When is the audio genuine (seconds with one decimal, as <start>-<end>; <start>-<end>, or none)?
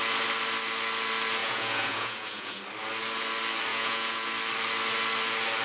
0.0-1.4; 2.6-3.7; 4.3-5.6